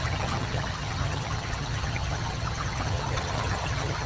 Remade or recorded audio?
remade